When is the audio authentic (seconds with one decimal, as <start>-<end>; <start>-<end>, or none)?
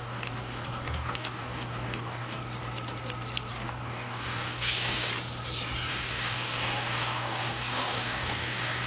2.4-3.5; 5.1-5.9